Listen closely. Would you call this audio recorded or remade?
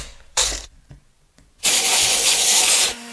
remade